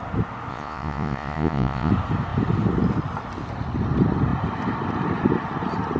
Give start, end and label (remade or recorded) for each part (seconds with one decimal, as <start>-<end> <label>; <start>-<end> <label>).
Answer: 0.0-0.5 recorded; 0.5-1.9 remade; 1.9-6.0 recorded